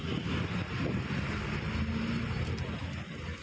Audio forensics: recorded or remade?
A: recorded